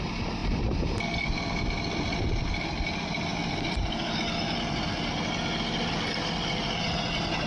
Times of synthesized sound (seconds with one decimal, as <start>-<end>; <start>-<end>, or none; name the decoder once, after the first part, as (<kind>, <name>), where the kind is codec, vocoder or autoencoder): none

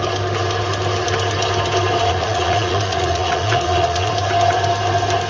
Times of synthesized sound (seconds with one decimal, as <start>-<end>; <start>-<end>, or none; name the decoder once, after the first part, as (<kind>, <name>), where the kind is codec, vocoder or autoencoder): 2.1-4.1 (vocoder, Vocos)